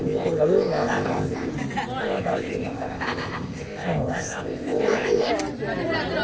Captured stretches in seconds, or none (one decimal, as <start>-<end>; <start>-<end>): 1.5-2.0; 5.3-6.2